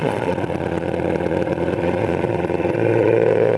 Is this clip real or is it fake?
fake